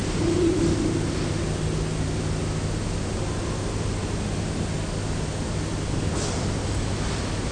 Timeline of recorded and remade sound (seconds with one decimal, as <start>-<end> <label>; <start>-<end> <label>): 0.0-7.5 recorded